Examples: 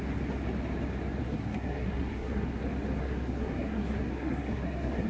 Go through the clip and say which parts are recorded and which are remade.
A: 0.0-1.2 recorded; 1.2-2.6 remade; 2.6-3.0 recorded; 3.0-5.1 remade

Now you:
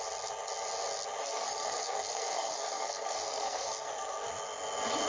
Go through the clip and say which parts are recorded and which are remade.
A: 0.0-1.2 recorded; 1.2-4.3 remade; 4.3-5.1 recorded

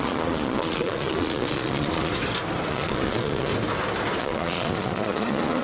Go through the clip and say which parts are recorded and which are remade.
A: 0.0-2.1 remade; 2.1-2.7 recorded; 2.7-3.5 remade; 3.5-4.2 recorded; 4.2-5.6 remade

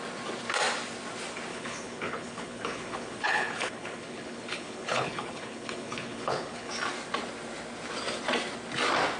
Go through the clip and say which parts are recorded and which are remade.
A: 0.0-1.5 recorded; 1.5-6.7 remade; 6.7-9.2 recorded

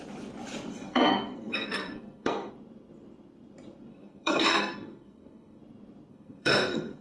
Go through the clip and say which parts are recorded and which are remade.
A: 0.0-0.7 recorded; 0.7-2.5 remade; 2.5-3.9 recorded; 3.9-5.6 remade; 5.6-6.1 recorded; 6.1-7.0 remade

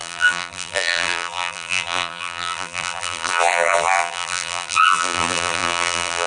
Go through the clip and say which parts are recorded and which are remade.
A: 0.0-6.3 remade

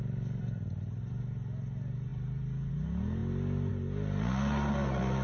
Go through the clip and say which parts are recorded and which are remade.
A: 0.0-2.1 recorded; 2.1-2.7 remade; 2.7-5.2 recorded